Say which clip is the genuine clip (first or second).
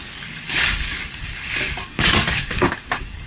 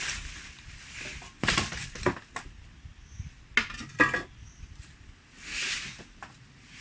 second